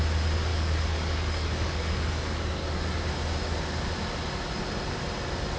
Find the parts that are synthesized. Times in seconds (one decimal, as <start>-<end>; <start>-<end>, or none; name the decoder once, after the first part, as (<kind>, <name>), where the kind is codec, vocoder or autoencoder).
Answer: 0.5-2.8 (codec, DAC)